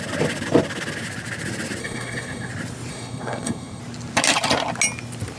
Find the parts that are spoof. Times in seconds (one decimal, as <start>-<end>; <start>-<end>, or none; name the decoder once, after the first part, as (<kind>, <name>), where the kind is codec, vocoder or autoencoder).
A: 1.8-2.5 (codec, SNAC); 2.9-3.8